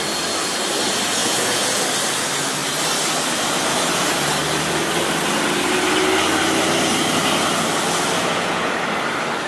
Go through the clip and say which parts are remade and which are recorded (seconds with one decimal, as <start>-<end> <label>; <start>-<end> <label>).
0.0-1.2 recorded; 1.2-1.8 remade; 1.8-8.2 recorded; 8.2-8.7 remade; 8.7-9.5 recorded